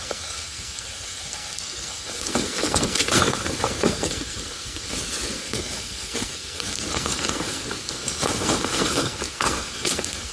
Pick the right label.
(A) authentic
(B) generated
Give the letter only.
B